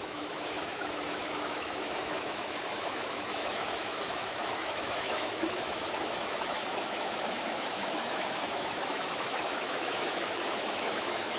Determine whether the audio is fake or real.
fake